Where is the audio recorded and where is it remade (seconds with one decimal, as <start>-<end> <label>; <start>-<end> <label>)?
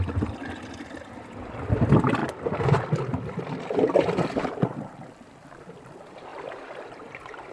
0.0-0.4 remade; 0.4-1.2 recorded; 1.2-2.2 remade; 2.2-3.1 recorded; 3.1-6.3 remade; 6.3-6.8 recorded; 6.8-7.5 remade